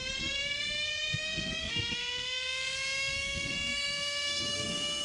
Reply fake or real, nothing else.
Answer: fake